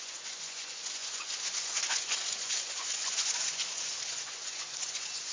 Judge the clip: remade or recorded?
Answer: remade